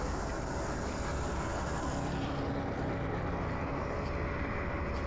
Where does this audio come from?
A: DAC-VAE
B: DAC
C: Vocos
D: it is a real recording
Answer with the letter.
D